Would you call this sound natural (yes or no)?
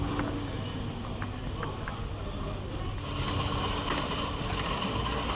yes